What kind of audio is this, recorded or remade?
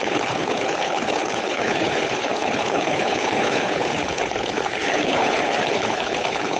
remade